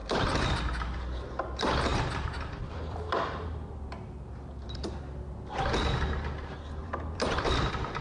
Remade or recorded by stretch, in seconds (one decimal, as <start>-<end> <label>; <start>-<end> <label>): 0.0-0.6 remade; 0.6-1.9 recorded; 1.9-5.0 remade; 5.0-6.8 recorded; 6.8-8.0 remade